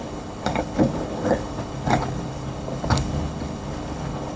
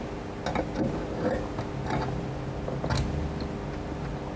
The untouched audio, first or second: second